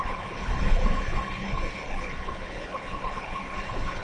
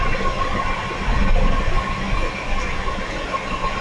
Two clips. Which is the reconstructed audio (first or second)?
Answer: first